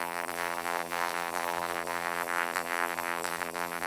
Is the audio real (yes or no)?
no